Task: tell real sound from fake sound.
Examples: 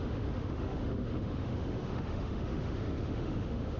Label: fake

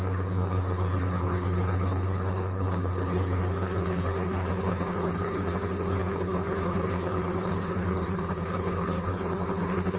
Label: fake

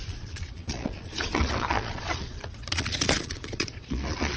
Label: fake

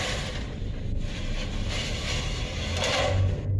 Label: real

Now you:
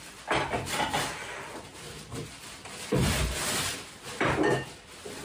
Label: fake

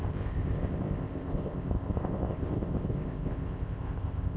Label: fake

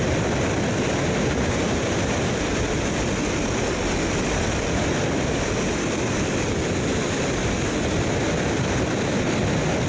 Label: fake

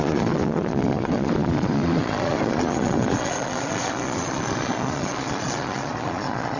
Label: fake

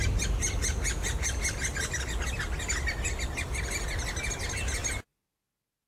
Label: real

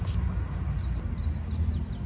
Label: real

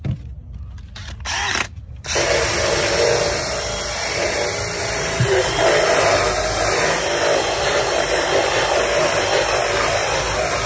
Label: real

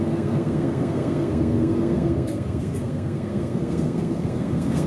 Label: fake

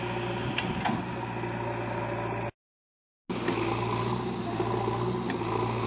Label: real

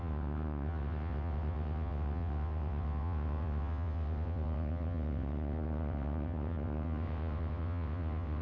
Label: fake